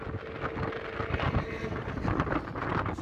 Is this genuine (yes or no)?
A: yes